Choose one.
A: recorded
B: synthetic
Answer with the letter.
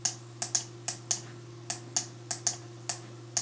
A